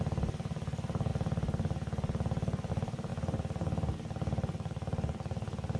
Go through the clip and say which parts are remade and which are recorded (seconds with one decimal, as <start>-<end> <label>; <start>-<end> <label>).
0.0-5.8 recorded